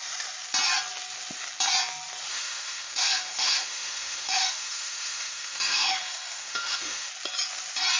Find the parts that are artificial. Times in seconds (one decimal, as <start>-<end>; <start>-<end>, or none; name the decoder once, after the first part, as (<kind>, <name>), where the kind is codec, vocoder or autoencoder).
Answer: 2.3-7.1 (autoencoder, DAC-VAE)